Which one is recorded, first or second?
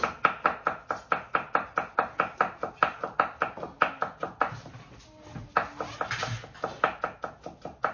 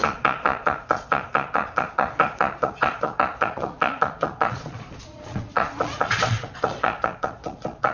first